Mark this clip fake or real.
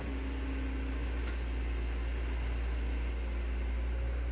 real